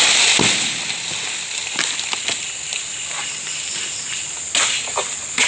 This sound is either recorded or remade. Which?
recorded